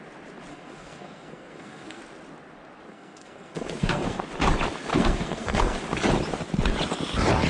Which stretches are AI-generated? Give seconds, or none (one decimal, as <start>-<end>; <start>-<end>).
0.5-2.0; 2.9-4.2; 4.9-5.8